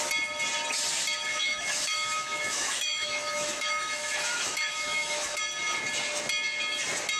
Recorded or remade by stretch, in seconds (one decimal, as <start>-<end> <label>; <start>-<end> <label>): 0.0-1.3 recorded; 1.3-5.4 remade; 5.4-7.2 recorded